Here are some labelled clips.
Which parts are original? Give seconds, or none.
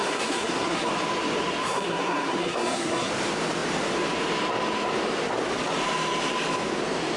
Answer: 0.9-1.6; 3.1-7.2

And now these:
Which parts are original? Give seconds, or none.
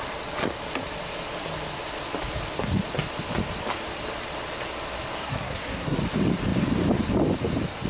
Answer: 0.0-5.2; 6.0-7.9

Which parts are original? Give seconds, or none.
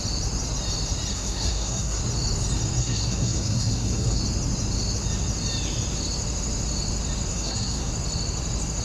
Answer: 0.0-1.1; 2.0-2.8; 4.2-7.3; 7.9-8.8